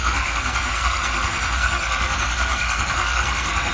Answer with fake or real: fake